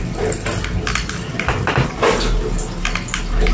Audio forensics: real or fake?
real